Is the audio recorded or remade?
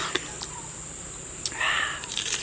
remade